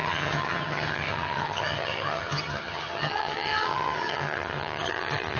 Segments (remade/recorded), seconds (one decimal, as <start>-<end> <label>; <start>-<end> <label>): 0.0-5.4 remade